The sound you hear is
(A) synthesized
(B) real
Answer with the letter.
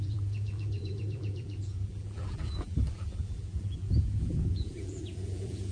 A